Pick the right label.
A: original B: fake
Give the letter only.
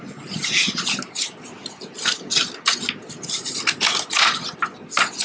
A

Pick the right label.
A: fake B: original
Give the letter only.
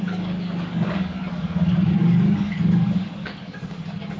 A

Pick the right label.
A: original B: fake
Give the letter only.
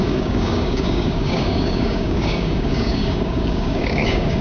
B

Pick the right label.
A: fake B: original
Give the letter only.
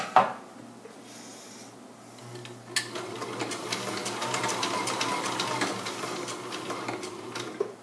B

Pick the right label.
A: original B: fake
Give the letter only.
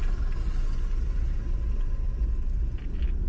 A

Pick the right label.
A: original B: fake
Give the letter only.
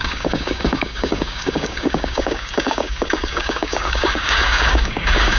B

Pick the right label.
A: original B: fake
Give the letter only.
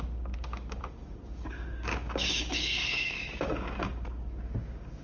B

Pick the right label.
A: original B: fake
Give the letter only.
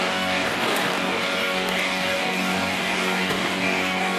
B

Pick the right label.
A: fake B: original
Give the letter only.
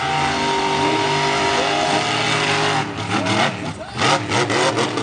B